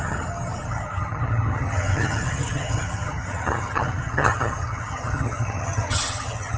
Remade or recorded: remade